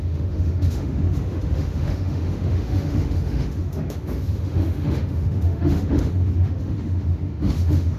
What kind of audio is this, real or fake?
fake